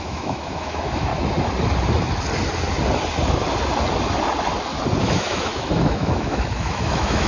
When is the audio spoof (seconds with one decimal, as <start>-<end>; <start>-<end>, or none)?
0.0-1.1; 5.0-7.3